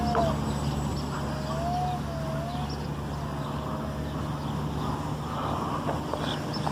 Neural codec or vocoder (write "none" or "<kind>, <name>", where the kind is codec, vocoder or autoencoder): none